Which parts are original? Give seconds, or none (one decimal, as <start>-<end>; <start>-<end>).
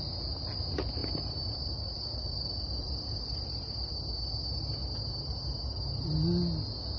0.0-1.0; 3.9-7.0